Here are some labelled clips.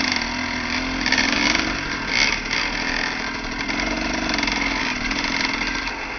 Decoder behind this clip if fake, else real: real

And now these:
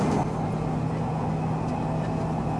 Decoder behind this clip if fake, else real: real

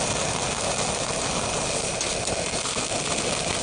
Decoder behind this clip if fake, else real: real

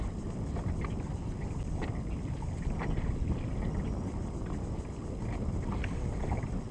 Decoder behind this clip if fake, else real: real